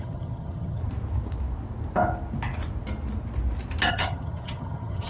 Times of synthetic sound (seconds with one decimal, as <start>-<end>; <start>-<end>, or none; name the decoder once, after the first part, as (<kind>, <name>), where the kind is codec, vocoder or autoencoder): 0.0-0.8 (vocoder, HiFi-GAN); 3.9-5.1

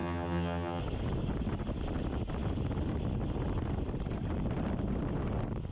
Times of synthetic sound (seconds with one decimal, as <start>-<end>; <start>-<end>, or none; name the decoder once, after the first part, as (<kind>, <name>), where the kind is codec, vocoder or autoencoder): 0.0-0.8 (vocoder, HiFi-GAN)

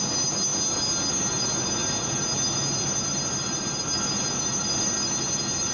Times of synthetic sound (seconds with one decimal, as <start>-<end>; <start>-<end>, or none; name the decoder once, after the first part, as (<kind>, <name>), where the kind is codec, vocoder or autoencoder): none

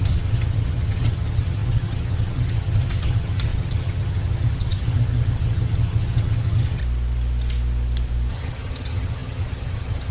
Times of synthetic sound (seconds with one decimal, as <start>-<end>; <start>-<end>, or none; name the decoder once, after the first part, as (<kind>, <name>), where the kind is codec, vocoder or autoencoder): 0.0-6.8 (vocoder, HiFi-GAN); 8.3-10.1

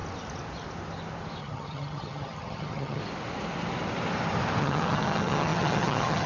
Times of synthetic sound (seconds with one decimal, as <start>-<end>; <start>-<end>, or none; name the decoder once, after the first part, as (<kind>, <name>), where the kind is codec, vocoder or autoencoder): 1.4-3.0 (vocoder, HiFi-GAN); 4.6-6.3

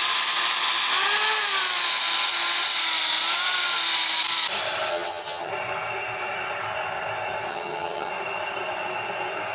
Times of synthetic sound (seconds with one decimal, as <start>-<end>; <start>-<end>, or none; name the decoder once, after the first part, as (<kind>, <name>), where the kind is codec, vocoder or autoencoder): 4.9-5.5 (vocoder, HiFi-GAN); 7.5-8.1

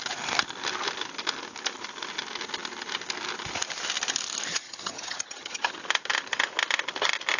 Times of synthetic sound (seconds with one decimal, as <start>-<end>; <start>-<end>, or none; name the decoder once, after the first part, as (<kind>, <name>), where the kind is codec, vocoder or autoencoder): 4.5-5.8 (vocoder, HiFi-GAN)

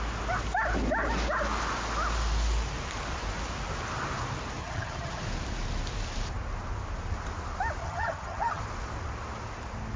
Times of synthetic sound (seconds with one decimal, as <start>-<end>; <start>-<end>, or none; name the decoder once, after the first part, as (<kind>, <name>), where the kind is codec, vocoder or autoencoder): 4.6-5.2 (vocoder, HiFi-GAN); 7.8-8.6